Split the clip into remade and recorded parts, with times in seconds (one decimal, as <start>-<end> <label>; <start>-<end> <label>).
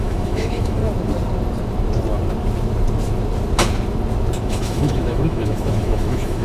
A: 0.0-0.8 remade; 0.8-4.4 recorded; 4.4-6.4 remade